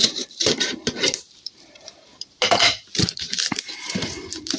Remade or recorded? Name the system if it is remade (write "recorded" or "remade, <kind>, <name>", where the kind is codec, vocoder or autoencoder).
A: remade, vocoder, BigVGAN v2